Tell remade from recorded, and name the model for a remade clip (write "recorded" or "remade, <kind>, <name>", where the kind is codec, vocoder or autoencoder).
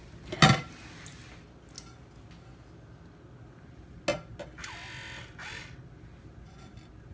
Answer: recorded